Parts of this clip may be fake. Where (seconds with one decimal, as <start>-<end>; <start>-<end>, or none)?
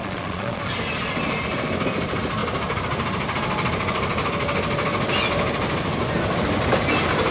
0.0-0.6